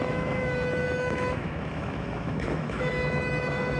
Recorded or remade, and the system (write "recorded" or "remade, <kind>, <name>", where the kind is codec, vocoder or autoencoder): remade, autoencoder, DAC-VAE